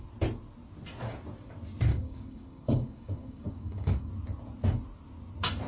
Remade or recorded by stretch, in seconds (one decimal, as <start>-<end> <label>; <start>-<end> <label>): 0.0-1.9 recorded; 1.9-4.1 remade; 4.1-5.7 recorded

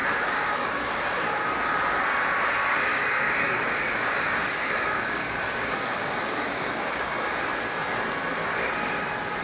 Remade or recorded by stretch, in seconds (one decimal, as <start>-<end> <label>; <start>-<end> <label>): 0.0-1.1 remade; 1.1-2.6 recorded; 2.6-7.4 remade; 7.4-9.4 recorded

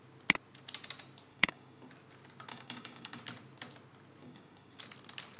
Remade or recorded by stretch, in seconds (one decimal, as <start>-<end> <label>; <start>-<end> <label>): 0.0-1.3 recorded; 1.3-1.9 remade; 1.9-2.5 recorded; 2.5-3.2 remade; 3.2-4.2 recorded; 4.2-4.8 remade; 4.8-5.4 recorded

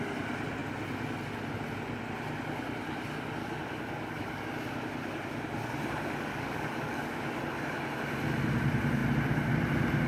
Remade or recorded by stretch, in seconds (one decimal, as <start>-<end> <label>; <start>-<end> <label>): 0.0-3.4 recorded; 3.4-4.4 remade; 4.4-6.3 recorded; 6.3-7.4 remade; 7.4-10.1 recorded